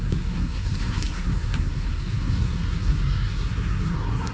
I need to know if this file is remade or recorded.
remade